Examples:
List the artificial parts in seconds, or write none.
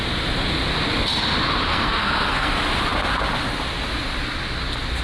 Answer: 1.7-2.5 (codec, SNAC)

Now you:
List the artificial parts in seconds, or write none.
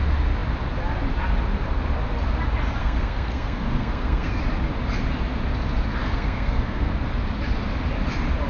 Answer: 2.8-4.4 (codec, SNAC); 6.0-6.9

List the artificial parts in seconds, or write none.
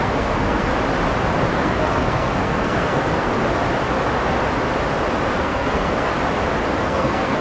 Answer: 0.0-0.7 (codec, SNAC); 1.5-3.3; 5.4-6.1; 6.8-7.4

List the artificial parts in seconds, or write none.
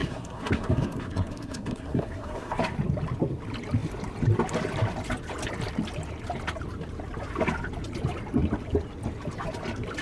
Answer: 0.0-2.6 (codec, SNAC)